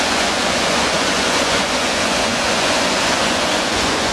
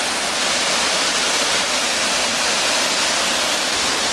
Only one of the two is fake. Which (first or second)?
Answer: first